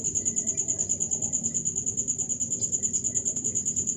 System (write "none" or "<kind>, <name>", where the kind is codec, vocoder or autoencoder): none